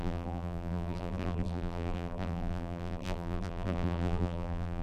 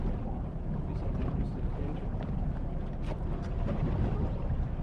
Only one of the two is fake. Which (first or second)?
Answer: first